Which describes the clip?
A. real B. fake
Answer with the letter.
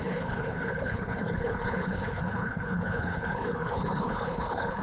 B